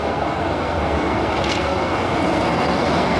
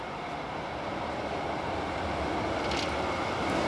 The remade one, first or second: first